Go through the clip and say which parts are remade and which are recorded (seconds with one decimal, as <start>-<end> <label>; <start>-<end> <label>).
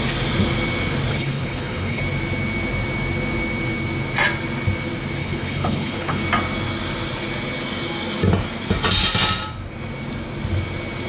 0.0-1.1 recorded; 1.1-2.0 remade; 2.0-5.2 recorded; 5.2-6.2 remade; 6.2-11.1 recorded